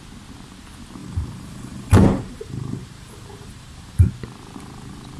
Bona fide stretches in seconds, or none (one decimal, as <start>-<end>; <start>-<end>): 0.0-1.0; 4.1-5.2